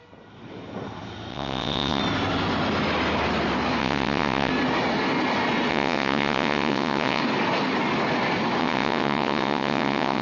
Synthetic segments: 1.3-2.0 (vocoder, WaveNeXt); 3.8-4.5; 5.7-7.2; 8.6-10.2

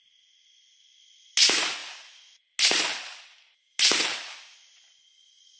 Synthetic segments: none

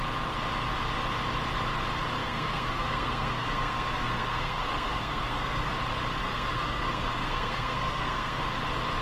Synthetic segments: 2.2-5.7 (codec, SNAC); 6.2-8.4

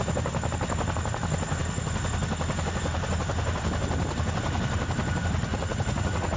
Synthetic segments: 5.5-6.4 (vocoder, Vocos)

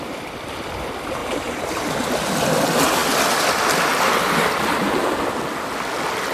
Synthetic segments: 1.2-1.9 (vocoder, BigVGAN v2)